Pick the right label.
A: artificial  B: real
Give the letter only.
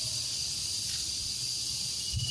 B